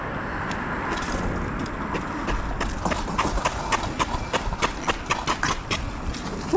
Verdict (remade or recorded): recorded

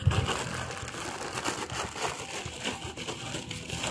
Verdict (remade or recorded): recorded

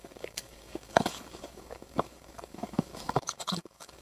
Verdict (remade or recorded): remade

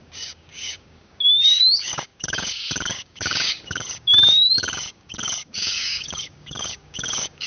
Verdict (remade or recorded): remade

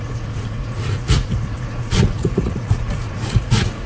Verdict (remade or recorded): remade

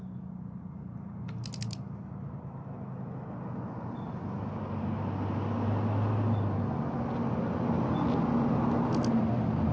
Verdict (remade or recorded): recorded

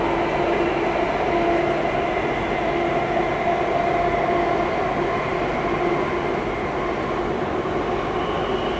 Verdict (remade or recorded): recorded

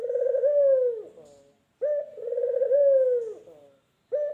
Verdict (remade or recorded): recorded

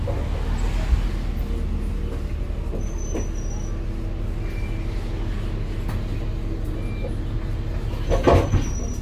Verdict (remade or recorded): recorded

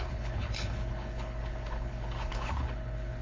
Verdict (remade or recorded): remade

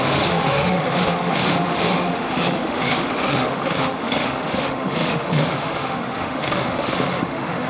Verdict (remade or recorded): remade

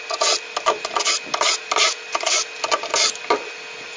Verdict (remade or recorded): recorded